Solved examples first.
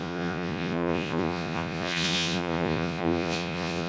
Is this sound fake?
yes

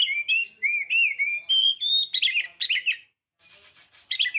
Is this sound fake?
no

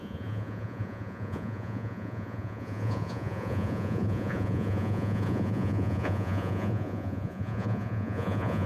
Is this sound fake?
yes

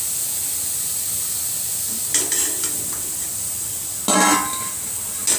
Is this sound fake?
no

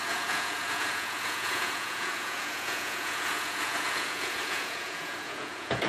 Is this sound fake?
yes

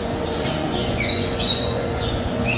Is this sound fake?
yes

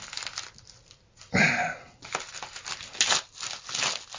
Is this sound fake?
no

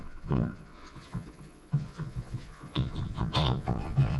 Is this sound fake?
yes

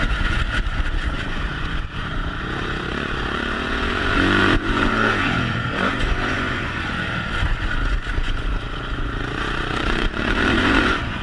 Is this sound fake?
yes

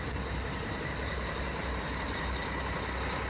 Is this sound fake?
no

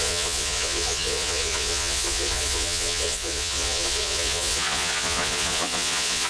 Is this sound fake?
yes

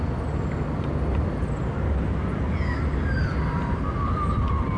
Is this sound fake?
no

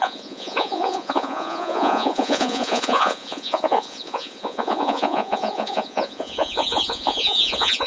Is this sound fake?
yes